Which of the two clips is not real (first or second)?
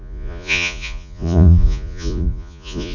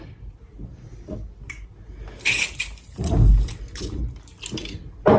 first